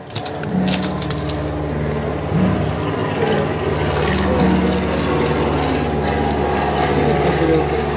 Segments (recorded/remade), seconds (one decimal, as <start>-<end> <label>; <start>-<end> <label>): 0.0-8.0 recorded